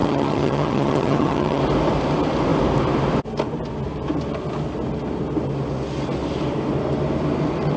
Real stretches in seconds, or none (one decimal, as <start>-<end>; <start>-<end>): 1.6-7.8